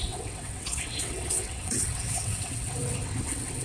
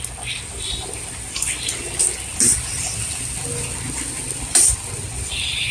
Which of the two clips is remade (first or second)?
first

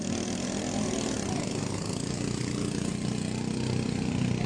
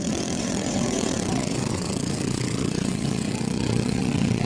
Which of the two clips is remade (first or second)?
second